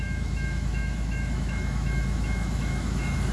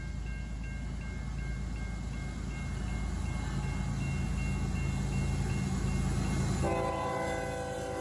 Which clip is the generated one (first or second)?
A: first